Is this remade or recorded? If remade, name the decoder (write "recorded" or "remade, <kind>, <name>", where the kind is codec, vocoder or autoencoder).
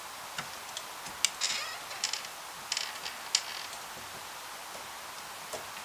recorded